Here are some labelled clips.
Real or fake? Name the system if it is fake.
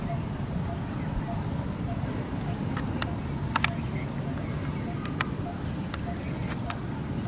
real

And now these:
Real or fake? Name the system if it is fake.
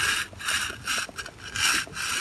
real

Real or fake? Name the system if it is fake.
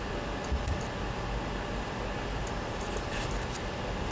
real